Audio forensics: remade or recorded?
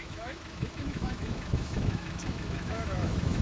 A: remade